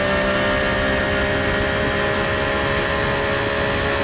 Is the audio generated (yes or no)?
no